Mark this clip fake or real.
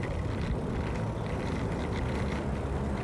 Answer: real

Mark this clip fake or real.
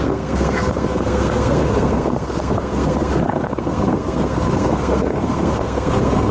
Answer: fake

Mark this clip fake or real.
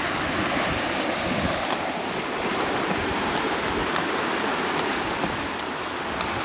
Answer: real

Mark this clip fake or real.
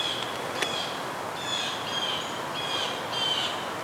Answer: real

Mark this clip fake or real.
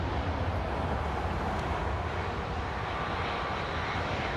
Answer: real